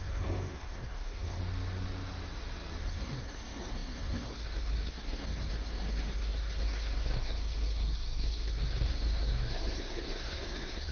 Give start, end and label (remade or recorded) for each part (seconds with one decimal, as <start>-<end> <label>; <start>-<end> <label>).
0.0-1.4 remade; 1.4-2.8 recorded; 2.8-10.9 remade